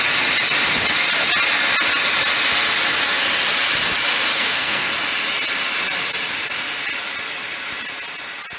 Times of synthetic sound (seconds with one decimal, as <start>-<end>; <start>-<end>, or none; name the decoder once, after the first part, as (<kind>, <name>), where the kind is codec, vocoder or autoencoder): 4.3-4.9 (codec, SNAC)